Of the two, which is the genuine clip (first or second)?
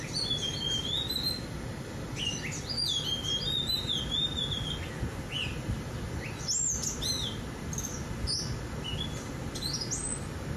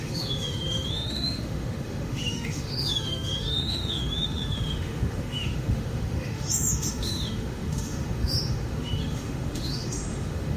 first